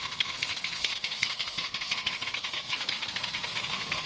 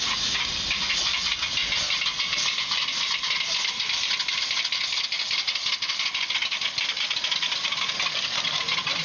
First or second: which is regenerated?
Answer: first